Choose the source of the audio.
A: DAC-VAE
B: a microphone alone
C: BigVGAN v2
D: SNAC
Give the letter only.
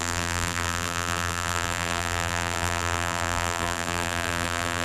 C